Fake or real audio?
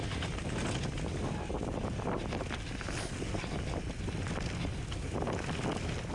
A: real